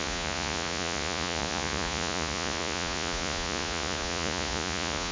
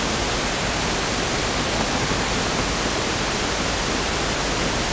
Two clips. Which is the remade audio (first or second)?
first